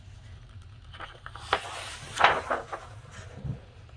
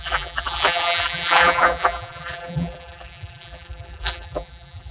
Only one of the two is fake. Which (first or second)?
second